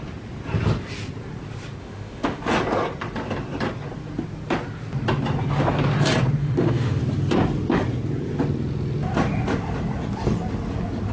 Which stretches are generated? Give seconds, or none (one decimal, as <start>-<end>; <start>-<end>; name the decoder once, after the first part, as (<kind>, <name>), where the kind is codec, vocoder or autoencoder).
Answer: 1.8-2.4 (autoencoder, DAC-VAE); 6.4-7.0